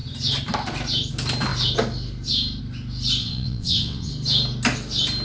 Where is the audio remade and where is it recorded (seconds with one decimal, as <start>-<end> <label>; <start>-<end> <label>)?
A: 0.0-3.2 recorded; 3.2-4.1 remade; 4.1-5.2 recorded